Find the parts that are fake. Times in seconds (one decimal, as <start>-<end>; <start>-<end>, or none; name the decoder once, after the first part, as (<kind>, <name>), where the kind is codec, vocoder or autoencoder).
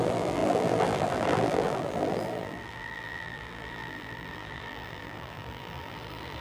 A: 0.0-6.4 (vocoder, BigVGAN v2)